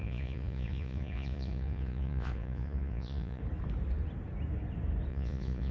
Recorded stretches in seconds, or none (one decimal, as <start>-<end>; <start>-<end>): 3.4-5.1